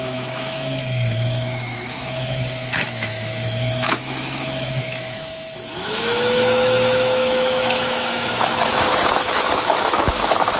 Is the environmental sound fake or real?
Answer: fake